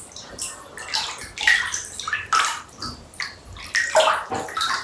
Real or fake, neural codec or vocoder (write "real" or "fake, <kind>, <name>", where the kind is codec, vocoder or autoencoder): real